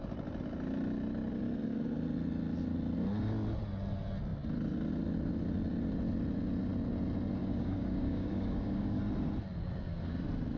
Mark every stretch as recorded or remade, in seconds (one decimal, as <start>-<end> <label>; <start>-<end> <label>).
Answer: 0.0-7.4 recorded; 7.4-9.0 remade; 9.0-10.6 recorded